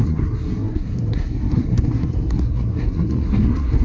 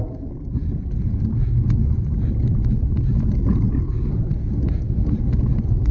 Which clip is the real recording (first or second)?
second